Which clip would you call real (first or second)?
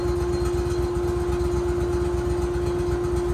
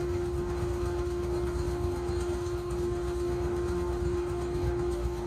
first